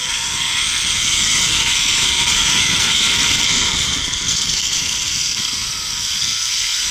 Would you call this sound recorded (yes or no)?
no